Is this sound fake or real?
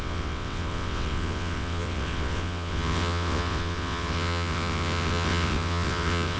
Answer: fake